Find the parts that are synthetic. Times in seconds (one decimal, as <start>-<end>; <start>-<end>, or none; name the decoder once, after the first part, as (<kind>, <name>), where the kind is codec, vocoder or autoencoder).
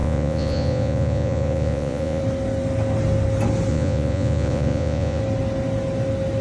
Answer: 0.0-2.2 (vocoder, Vocos); 3.7-5.2